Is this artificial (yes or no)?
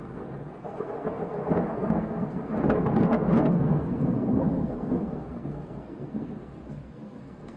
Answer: yes